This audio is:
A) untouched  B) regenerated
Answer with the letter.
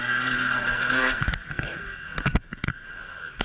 B